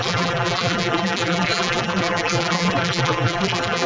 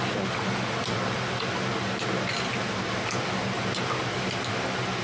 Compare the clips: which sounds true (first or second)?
second